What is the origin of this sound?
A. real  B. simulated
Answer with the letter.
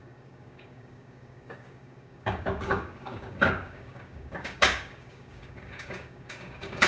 B